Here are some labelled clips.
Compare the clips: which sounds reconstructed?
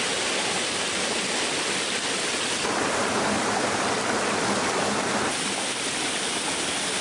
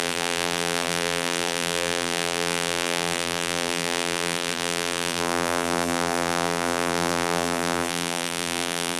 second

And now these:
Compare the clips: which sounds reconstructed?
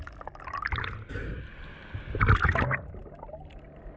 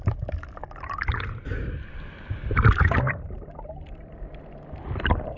second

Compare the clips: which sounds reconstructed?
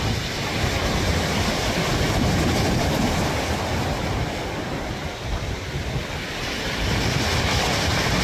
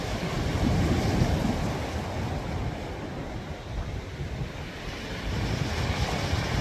first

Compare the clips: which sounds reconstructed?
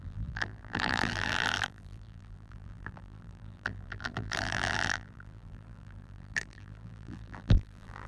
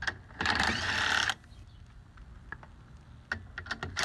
first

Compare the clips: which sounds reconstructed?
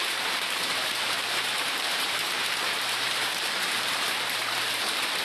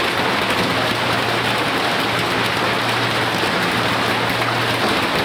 first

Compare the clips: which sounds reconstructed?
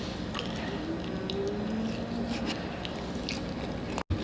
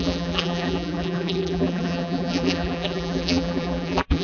second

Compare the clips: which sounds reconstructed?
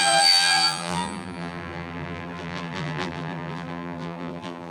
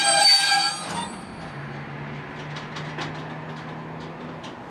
first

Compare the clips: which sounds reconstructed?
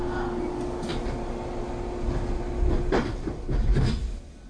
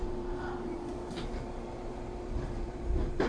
second